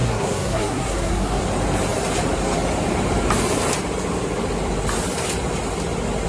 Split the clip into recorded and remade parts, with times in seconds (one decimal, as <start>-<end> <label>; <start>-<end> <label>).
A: 0.0-1.4 remade; 1.4-6.3 recorded